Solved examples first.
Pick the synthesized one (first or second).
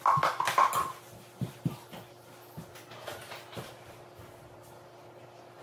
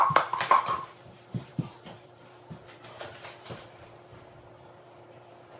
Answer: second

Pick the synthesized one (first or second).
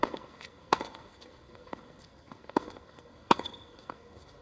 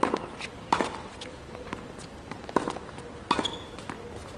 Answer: first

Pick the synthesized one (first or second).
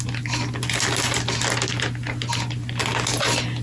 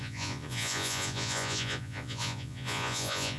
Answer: second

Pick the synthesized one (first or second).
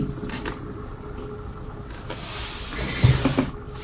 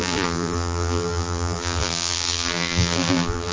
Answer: second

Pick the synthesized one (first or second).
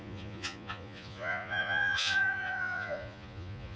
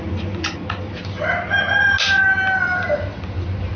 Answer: first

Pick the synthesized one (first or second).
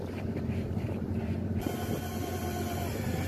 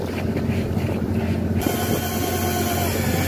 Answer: first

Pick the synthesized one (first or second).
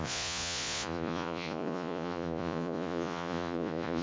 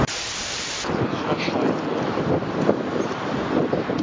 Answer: first